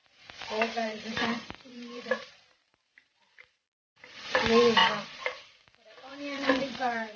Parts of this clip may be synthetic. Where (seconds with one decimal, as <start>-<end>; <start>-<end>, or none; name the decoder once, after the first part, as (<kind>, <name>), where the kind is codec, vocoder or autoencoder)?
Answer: 0.0-4.3 (vocoder, BigVGAN v2); 4.8-5.5; 6.1-7.2